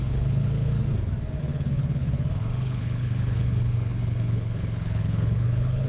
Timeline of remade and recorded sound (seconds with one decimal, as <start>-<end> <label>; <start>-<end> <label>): 0.0-0.8 remade; 0.8-1.4 recorded; 1.4-5.9 remade